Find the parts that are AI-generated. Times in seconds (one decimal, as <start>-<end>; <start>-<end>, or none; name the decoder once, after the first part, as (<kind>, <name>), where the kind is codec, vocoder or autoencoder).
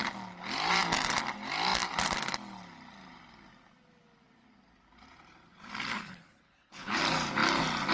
5.9-7.0 (codec, HILCodec)